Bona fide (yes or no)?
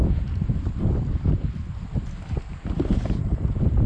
yes